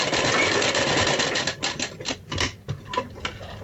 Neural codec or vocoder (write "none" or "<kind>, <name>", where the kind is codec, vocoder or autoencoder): none